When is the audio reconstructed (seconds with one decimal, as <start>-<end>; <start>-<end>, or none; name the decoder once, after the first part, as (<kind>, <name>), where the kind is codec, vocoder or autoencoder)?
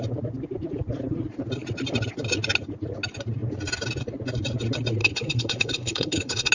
5.0-6.5 (codec, HILCodec)